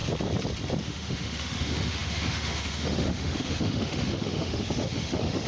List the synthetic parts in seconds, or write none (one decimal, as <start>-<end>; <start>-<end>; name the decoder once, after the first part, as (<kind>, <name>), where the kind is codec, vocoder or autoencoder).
0.8-5.5 (autoencoder, DAC-VAE)